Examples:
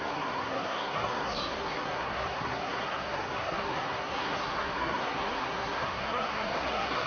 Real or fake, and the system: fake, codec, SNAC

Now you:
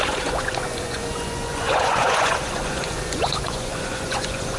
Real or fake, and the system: fake, vocoder, Vocos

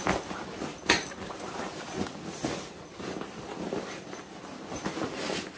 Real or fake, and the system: real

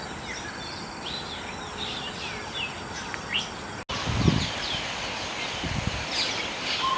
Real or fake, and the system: real